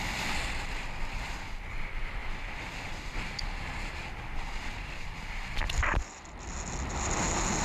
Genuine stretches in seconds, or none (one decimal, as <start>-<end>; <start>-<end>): 0.0-7.6